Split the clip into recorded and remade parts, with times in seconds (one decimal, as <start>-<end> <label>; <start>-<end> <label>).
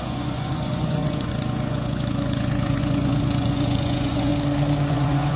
0.0-4.3 remade; 4.3-4.9 recorded; 4.9-5.4 remade